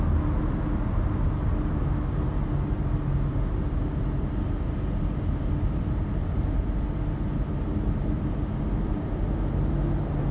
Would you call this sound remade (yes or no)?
no